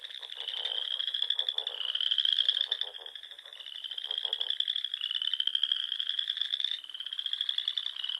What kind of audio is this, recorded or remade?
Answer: recorded